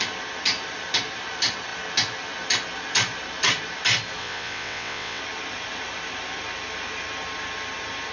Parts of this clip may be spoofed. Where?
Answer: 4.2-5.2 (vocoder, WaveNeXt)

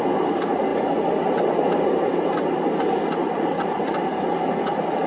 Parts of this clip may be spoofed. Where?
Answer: none

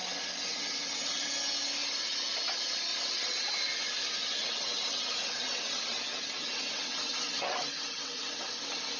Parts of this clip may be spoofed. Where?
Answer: 0.5-1.3 (vocoder, WaveNeXt); 2.9-3.6; 4.2-8.5